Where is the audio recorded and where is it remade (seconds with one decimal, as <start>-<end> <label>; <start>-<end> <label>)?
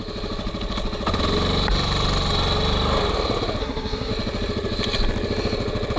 0.0-3.6 recorded; 3.6-4.1 remade; 4.1-6.0 recorded